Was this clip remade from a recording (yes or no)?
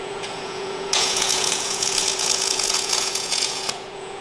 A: yes